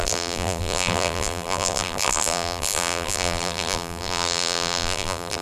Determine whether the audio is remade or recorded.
remade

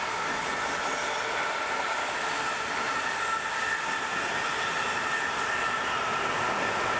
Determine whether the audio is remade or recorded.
recorded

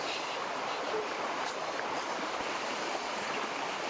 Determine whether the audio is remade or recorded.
remade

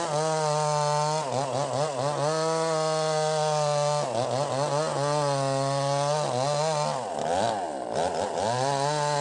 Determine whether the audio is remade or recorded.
recorded